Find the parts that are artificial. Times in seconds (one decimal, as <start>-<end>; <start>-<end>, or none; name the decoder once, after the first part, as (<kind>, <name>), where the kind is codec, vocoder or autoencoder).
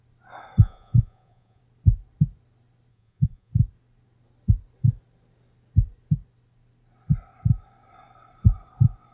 0.6-1.6 (vocoder, Vocos); 2.9-3.5